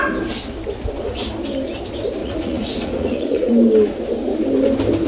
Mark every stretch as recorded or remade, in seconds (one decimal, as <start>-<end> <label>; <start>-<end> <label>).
0.0-2.2 recorded; 2.2-3.5 remade; 3.5-5.1 recorded